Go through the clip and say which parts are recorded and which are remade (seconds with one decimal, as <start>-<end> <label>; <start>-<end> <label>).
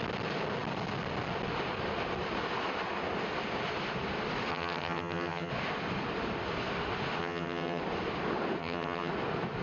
0.0-4.5 recorded; 4.5-5.5 remade; 5.5-7.2 recorded; 7.2-7.8 remade; 7.8-8.6 recorded; 8.6-9.1 remade; 9.1-9.6 recorded